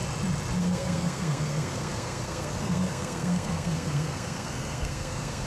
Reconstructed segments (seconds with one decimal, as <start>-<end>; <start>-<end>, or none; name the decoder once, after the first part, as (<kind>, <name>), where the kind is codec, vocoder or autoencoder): 0.6-5.5 (codec, SNAC)